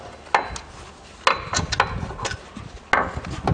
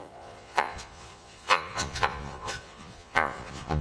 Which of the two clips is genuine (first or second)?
first